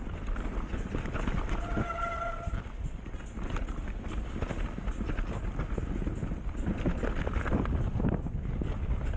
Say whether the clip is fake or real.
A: real